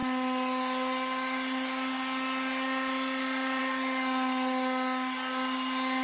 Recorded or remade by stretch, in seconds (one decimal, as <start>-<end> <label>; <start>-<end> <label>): 0.0-6.0 recorded